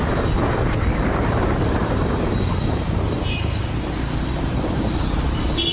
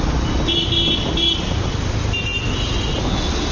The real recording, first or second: second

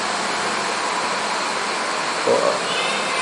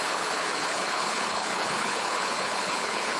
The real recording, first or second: first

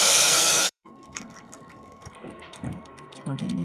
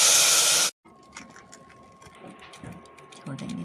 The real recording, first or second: second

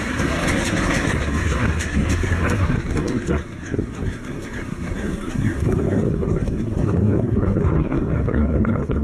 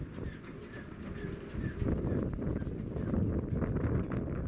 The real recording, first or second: second